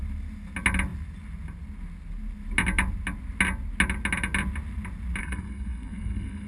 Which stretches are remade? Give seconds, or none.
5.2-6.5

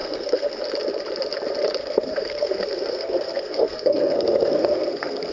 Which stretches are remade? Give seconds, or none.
0.0-0.6; 1.8-5.3

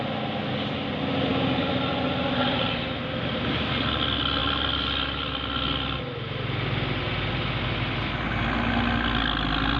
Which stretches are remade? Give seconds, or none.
none